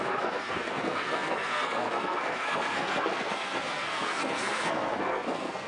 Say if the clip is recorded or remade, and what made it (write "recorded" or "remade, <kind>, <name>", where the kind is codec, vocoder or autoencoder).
remade, codec, SNAC